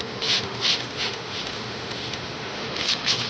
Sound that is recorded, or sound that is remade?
remade